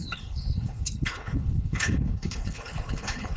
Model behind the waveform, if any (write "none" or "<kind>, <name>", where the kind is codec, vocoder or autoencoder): codec, HILCodec